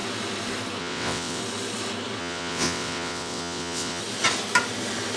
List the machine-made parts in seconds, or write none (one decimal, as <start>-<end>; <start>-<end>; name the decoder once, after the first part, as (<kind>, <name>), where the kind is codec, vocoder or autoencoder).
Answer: 0.8-1.4 (vocoder, WaveNeXt); 2.2-4.0